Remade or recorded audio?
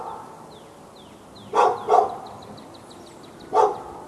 recorded